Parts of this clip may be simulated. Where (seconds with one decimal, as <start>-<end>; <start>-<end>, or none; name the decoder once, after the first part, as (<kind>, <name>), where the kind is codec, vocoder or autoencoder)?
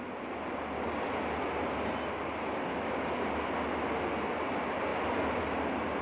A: none